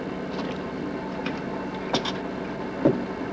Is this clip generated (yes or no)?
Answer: no